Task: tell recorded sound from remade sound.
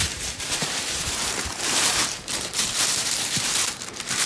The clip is remade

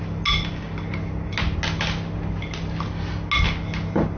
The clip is recorded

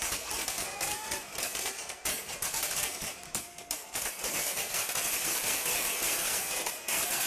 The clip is remade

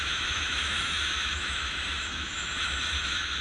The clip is remade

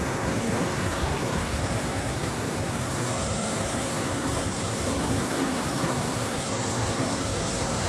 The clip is remade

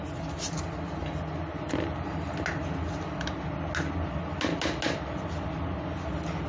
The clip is recorded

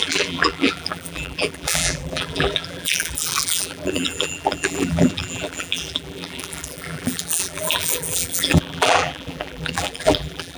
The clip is remade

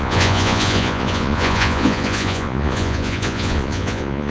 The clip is remade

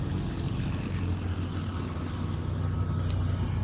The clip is recorded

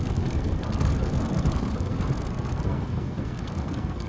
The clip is remade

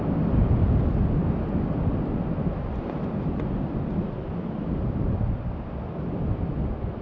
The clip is recorded